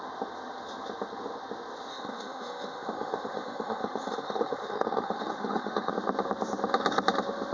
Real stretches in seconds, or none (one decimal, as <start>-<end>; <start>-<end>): 0.0-1.9; 5.9-7.5